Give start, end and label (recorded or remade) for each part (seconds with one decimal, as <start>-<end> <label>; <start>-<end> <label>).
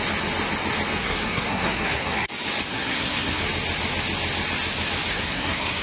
0.0-1.0 recorded; 1.0-2.3 remade; 2.3-2.7 recorded; 2.7-3.4 remade; 3.4-5.1 recorded; 5.1-5.8 remade